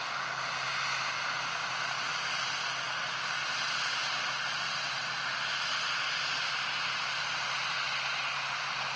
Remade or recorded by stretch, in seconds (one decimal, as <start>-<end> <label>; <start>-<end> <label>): 0.0-9.0 recorded